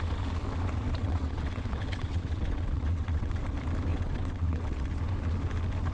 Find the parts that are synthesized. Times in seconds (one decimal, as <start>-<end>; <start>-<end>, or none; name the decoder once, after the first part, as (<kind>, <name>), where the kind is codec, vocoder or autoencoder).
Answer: 1.0-3.5 (vocoder, WaveNeXt); 3.9-4.9